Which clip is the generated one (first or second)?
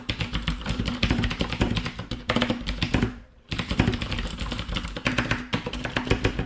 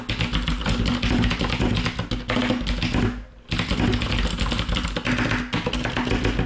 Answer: first